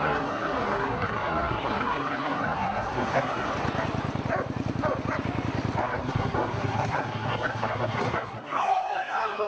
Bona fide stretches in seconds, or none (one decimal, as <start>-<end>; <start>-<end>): 3.5-5.8